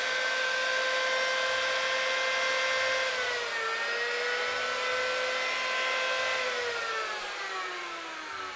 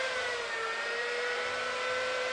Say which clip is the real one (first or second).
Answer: first